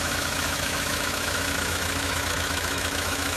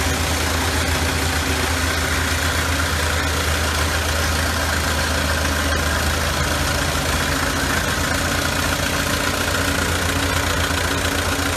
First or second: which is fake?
first